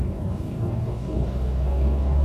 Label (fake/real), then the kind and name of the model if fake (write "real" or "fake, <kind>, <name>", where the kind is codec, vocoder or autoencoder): fake, codec, DAC